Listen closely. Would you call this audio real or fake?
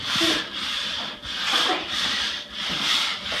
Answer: real